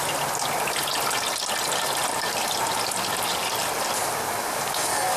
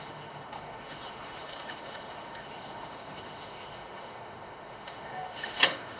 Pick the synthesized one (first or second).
second